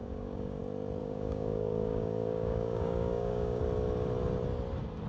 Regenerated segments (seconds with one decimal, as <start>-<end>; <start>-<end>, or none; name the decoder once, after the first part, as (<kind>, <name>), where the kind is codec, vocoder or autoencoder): 0.0-0.6 (codec, DAC); 1.0-3.6